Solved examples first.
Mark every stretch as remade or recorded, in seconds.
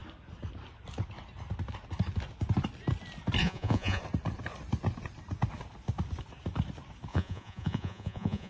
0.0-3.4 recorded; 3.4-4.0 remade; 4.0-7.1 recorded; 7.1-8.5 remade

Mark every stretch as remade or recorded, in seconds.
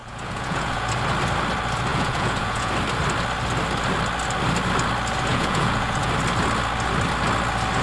0.0-0.9 remade; 0.9-1.9 recorded; 1.9-2.7 remade; 2.7-5.3 recorded; 5.3-6.1 remade; 6.1-7.8 recorded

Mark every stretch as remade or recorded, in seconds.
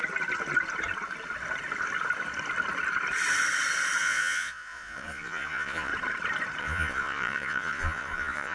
0.0-4.0 recorded; 4.0-5.9 remade; 5.9-6.6 recorded; 6.6-8.5 remade